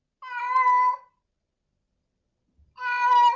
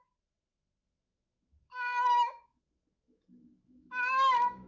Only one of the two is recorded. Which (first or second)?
first